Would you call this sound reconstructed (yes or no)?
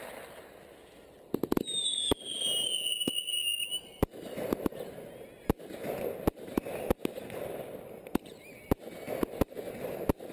no